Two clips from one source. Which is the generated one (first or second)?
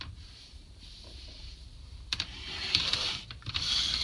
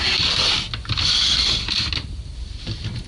first